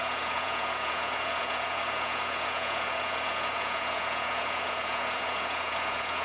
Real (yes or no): no